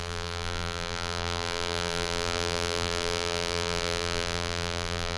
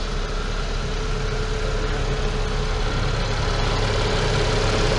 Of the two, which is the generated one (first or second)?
first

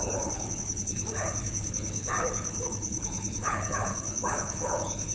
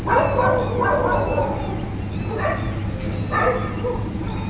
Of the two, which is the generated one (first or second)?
first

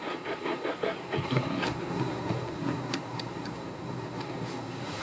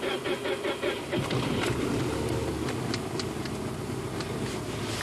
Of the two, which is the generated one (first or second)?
first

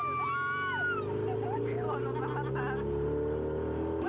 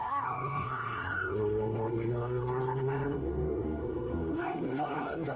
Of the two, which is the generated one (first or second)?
second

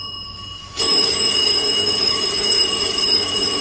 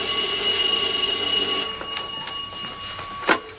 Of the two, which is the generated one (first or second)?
first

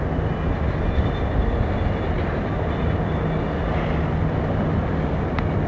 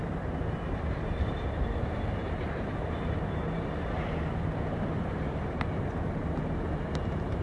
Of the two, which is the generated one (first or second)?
second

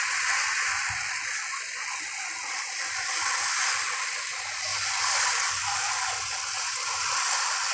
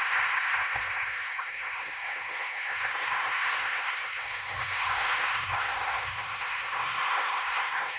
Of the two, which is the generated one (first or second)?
second